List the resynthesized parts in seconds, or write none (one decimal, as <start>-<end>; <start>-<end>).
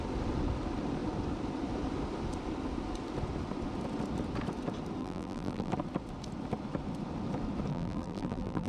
5.0-5.7; 7.7-8.7